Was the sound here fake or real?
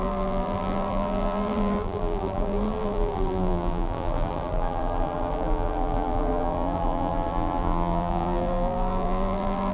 fake